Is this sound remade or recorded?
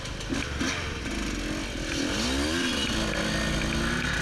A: recorded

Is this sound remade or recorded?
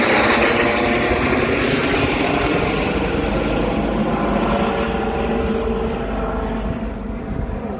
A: recorded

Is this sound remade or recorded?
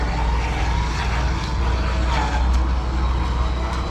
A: recorded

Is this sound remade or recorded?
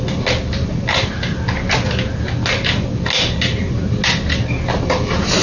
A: recorded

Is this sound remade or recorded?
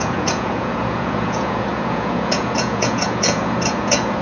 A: remade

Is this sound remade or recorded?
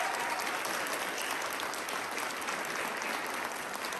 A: recorded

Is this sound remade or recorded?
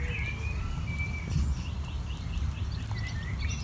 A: recorded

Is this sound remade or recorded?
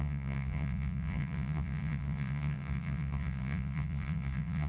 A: remade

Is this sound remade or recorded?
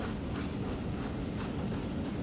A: recorded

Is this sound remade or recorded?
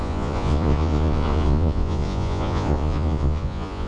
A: remade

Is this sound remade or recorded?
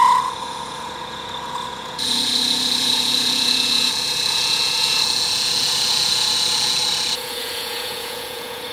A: remade